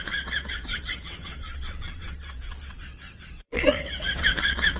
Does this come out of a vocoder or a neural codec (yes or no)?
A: yes